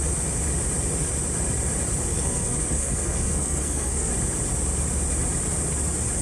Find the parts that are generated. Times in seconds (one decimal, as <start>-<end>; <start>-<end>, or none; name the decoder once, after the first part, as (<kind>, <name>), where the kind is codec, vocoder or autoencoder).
2.1-4.1 (codec, SNAC)